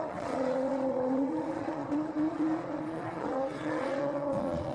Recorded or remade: remade